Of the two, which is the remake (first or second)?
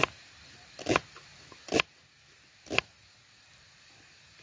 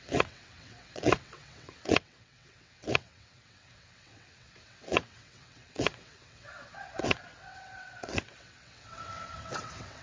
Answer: second